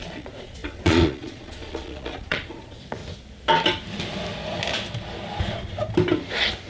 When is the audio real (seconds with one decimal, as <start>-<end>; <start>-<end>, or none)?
3.0-6.7